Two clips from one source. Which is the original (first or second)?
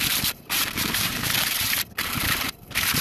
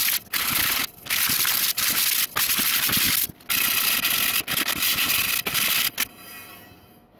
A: second